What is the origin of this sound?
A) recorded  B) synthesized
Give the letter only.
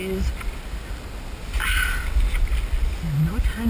A